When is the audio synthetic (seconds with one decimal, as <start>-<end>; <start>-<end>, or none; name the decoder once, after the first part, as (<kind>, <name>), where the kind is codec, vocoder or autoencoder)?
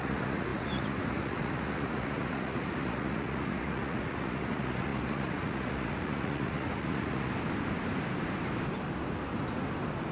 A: 0.0-7.3 (vocoder, Vocos)